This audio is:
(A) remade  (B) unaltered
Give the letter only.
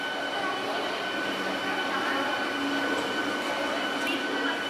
B